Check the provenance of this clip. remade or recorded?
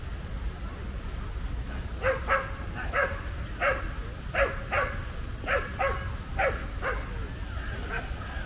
recorded